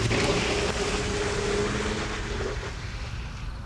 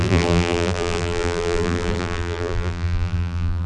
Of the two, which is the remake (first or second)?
second